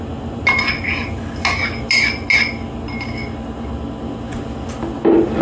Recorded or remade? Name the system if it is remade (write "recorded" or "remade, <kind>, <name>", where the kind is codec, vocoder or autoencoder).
recorded